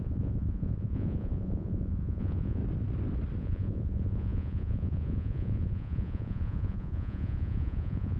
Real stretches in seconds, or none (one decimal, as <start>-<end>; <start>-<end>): 2.6-3.4